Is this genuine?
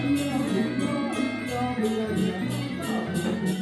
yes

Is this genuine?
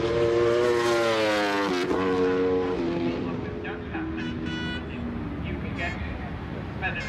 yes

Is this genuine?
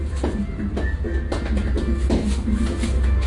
yes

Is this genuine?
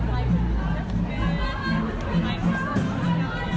yes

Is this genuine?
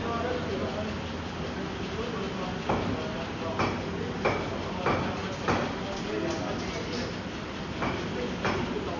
yes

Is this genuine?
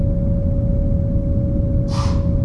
yes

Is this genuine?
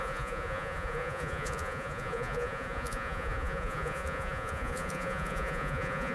no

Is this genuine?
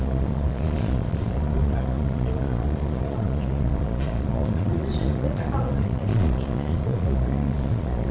no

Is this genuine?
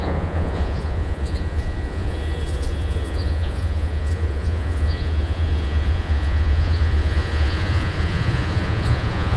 no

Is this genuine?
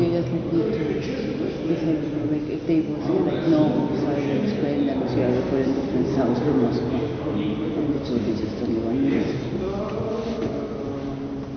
yes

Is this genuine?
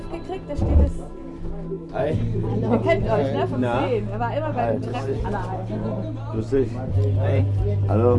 yes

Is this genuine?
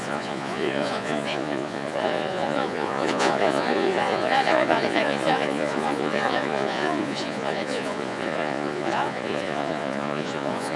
no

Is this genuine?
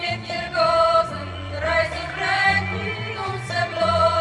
no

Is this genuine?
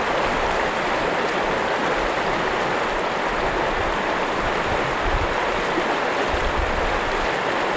yes